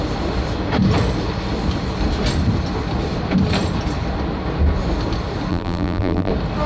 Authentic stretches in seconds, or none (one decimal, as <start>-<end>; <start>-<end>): 0.0-5.5; 6.3-6.7